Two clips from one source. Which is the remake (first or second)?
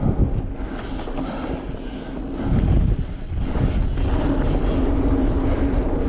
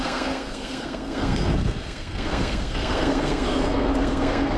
second